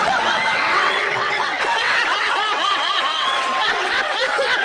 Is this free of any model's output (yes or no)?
no